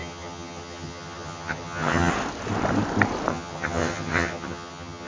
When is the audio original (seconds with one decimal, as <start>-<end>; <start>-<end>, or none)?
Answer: 2.1-3.3